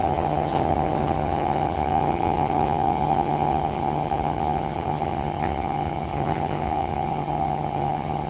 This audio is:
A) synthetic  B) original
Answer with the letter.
A